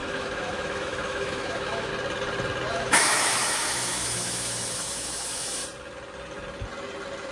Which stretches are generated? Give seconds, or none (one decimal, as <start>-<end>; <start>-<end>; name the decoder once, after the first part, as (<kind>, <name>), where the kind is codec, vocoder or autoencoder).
0.0-1.9 (autoencoder, DAC-VAE); 2.7-5.6